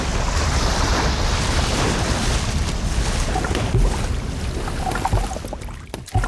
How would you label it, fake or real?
real